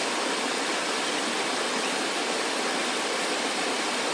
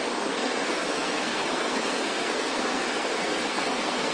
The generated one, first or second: second